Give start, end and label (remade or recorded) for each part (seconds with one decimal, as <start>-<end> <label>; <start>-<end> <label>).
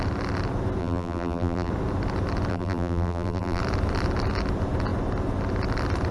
0.0-0.8 recorded; 0.8-1.7 remade; 1.7-2.5 recorded; 2.5-3.6 remade; 3.6-6.1 recorded